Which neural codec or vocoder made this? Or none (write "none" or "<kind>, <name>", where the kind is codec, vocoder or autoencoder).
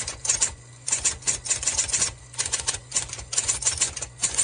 vocoder, Vocos